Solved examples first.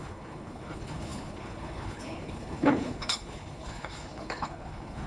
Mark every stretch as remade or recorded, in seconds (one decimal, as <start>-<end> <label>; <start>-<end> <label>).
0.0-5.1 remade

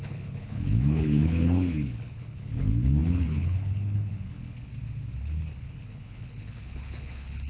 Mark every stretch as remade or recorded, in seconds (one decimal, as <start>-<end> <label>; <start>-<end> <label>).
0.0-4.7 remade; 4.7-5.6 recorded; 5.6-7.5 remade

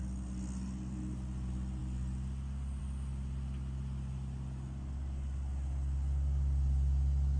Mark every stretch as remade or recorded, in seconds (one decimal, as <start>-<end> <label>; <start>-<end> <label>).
0.0-7.4 recorded

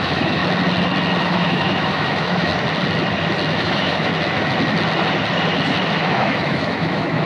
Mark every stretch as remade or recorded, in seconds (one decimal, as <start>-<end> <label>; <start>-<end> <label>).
0.0-0.4 remade; 0.4-1.2 recorded; 1.2-2.5 remade; 2.5-3.5 recorded; 3.5-4.1 remade; 4.1-5.9 recorded; 5.9-7.3 remade